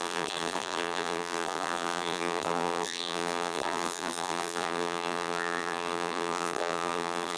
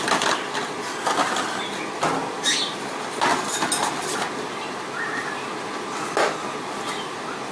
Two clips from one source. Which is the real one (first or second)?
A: second